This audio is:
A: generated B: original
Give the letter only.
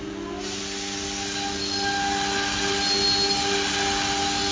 B